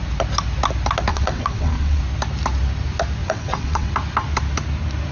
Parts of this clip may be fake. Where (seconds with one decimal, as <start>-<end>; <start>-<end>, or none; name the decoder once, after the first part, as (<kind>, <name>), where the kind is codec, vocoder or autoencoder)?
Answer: 1.1-2.0 (vocoder, WaveNeXt); 3.2-3.9